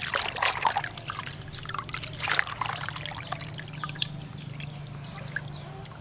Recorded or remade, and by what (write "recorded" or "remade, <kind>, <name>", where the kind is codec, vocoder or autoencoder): recorded